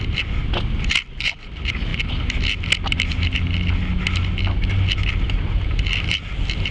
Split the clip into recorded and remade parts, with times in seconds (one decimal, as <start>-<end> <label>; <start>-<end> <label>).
0.0-6.7 recorded